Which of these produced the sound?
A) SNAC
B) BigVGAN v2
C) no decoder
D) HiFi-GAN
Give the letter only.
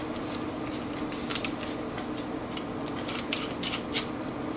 C